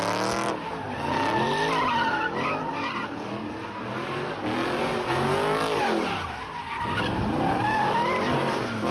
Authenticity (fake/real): real